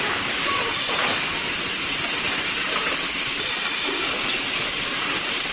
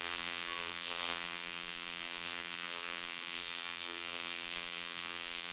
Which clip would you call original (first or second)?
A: first